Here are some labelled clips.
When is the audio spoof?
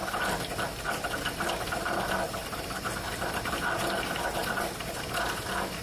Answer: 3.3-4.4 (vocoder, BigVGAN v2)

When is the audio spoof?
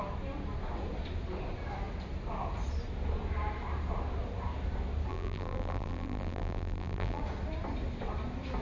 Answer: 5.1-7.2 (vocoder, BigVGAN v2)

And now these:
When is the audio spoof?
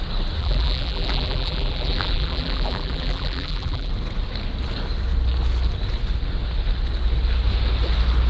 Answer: 0.4-3.9 (vocoder, BigVGAN v2)